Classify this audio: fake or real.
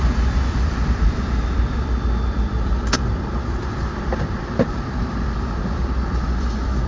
fake